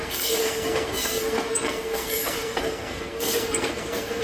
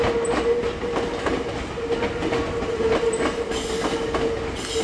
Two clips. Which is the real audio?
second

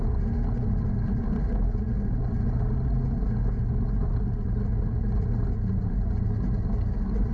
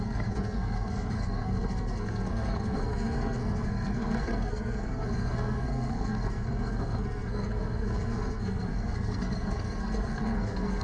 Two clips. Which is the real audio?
first